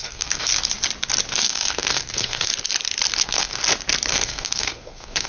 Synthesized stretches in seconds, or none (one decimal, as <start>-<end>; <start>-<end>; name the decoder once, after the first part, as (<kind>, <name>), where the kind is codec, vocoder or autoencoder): 0.0-0.5 (codec, SNAC); 1.3-2.5; 3.2-3.6; 4.1-5.3